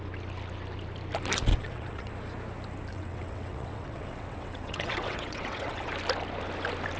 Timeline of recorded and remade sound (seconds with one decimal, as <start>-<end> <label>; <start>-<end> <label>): 0.0-1.5 recorded; 1.5-2.1 remade; 2.1-2.9 recorded; 2.9-5.9 remade; 5.9-7.0 recorded

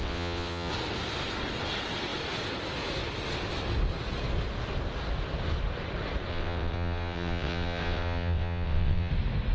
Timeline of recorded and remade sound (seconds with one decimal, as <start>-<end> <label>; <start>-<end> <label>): 0.0-0.7 remade; 0.7-6.3 recorded; 6.3-9.1 remade; 9.1-9.5 recorded

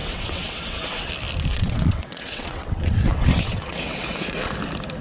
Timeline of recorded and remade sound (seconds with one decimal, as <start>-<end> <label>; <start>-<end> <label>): 0.0-1.1 remade; 1.1-1.5 recorded; 1.5-4.5 remade; 4.5-5.0 recorded